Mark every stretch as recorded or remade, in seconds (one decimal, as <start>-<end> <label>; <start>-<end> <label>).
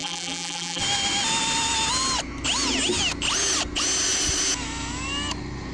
0.0-0.8 remade; 0.8-5.7 recorded